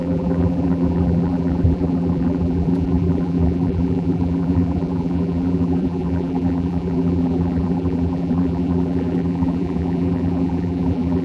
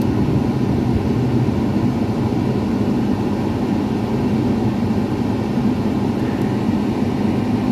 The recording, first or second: second